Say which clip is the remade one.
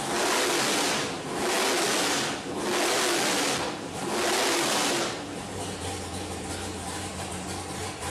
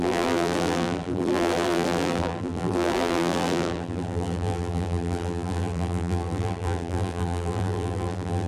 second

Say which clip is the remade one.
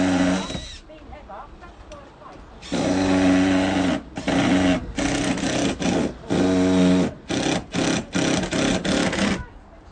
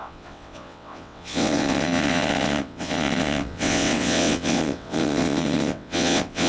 second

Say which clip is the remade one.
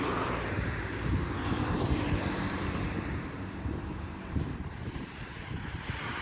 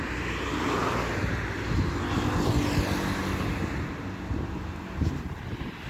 first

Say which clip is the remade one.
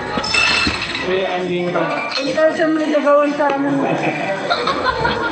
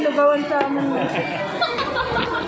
first